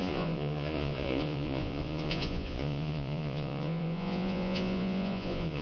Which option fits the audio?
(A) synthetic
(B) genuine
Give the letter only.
A